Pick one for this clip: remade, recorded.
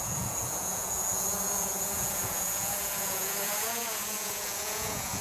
remade